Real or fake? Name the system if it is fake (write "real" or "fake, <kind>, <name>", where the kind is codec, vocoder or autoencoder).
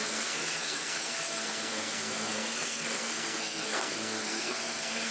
fake, codec, SNAC